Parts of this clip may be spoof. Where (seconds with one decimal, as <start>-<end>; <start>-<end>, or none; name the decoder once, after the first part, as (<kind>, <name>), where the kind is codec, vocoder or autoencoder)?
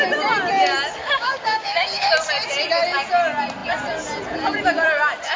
1.0-2.1 (codec, DAC)